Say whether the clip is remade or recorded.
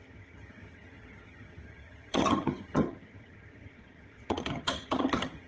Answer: remade